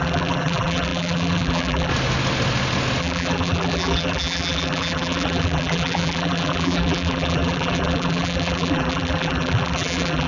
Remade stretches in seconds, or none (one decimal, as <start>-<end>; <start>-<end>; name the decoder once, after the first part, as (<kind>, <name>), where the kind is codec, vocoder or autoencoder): 0.0-1.9 (vocoder, BigVGAN v2); 3.0-10.3